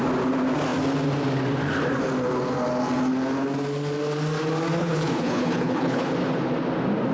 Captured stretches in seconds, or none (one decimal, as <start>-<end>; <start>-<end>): 0.0-4.8; 6.1-7.1